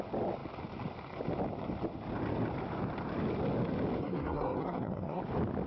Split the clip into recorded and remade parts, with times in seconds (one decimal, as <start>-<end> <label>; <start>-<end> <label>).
0.0-4.0 recorded; 4.0-5.2 remade; 5.2-5.7 recorded